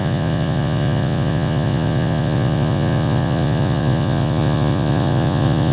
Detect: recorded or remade remade